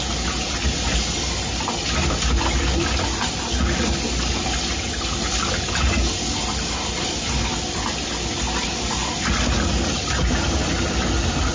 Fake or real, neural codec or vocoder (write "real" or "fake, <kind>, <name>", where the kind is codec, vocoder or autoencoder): real